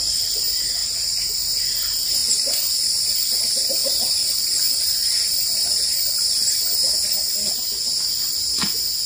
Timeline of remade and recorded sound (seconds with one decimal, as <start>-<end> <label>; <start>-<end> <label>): 0.0-9.1 recorded

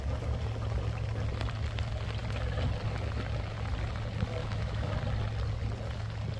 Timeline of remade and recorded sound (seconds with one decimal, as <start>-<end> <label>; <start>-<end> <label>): 0.0-4.4 recorded; 4.4-4.9 remade; 4.9-6.4 recorded

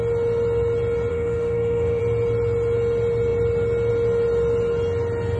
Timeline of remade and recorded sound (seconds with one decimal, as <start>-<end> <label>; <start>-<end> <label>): 0.0-1.1 recorded; 1.1-2.0 remade; 2.0-5.4 recorded

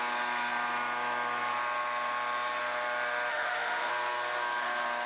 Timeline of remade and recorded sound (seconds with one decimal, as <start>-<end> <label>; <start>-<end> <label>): 0.0-3.3 recorded; 3.3-3.9 remade; 3.9-5.1 recorded

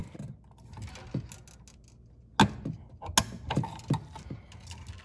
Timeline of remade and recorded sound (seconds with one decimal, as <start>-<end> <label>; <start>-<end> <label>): 0.0-5.0 recorded

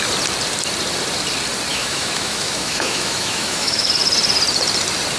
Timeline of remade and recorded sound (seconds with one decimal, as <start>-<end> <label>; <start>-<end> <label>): 0.0-1.7 recorded; 1.7-3.9 remade; 3.9-5.2 recorded